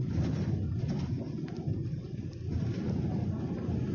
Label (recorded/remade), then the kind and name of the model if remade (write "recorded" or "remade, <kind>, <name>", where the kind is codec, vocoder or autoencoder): recorded